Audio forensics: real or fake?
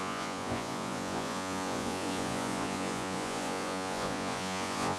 fake